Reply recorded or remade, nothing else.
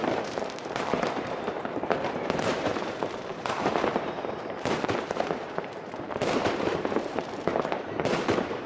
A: remade